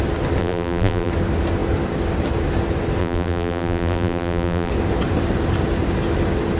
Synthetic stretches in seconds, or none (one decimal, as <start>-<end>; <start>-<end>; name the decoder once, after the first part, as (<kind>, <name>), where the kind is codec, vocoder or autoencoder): 0.4-1.1 (vocoder, BigVGAN v2); 3.0-4.7

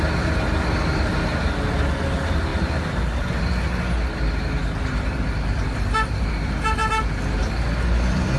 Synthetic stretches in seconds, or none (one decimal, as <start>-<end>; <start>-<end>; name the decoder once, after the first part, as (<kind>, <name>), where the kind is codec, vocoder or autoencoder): none

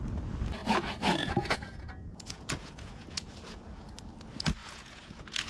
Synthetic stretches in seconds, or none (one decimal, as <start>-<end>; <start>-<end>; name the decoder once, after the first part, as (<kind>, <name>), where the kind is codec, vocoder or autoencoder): 0.6-3.9 (vocoder, Vocos); 4.6-5.5

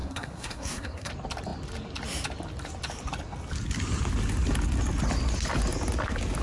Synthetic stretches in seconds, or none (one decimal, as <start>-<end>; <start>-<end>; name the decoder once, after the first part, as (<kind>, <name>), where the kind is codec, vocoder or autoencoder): 0.0-1.1 (codec, SNAC)

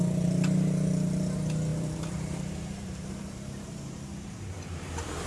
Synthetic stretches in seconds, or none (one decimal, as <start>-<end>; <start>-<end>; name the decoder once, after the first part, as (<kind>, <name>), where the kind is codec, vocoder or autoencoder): 1.7-5.3 (vocoder, BigVGAN v2)

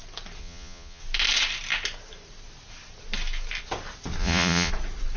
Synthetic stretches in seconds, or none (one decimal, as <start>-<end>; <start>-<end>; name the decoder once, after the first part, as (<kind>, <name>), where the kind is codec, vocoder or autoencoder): 0.4-1.0 (vocoder, Vocos); 4.2-4.7

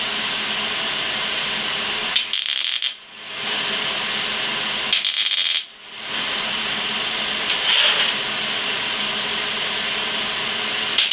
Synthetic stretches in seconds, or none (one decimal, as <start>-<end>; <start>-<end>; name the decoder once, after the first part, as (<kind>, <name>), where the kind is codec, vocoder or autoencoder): none